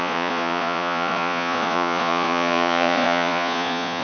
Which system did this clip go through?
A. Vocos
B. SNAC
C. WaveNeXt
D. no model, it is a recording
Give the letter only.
A